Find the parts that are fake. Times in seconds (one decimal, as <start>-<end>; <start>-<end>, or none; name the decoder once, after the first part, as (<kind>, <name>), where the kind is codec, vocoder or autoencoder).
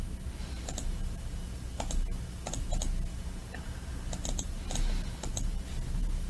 none